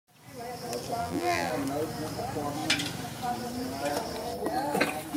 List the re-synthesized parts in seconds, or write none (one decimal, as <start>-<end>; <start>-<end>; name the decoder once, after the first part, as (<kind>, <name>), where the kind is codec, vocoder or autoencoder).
1.0-1.5 (vocoder, BigVGAN v2)